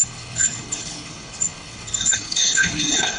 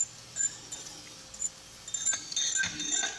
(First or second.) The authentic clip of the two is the second